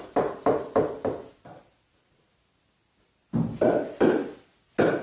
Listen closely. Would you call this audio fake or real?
real